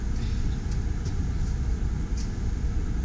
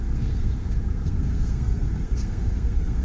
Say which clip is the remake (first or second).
second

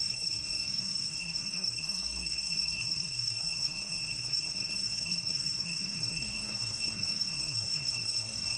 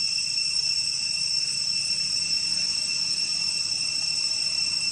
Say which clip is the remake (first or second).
first